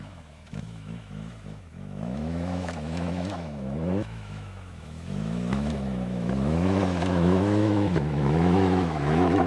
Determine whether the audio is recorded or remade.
remade